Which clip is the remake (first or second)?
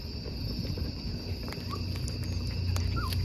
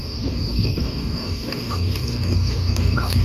second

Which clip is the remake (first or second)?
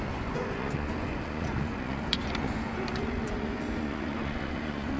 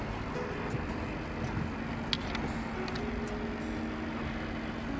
first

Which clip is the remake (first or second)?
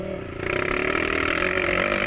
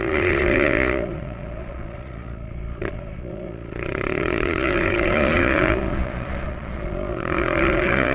second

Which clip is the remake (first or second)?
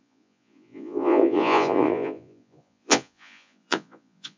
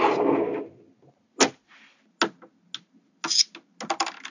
first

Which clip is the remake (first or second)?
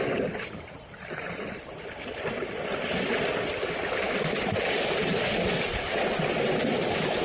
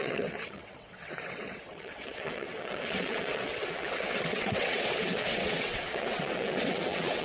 second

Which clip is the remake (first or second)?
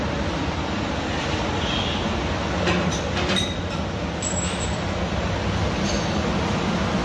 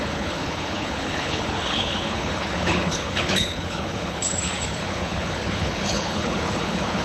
second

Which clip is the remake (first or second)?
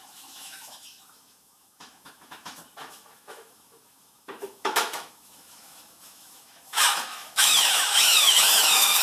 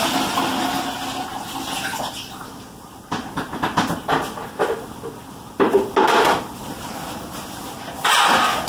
first